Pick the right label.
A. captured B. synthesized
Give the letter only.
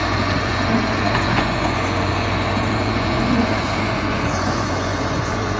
B